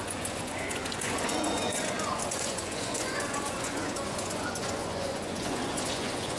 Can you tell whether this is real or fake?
fake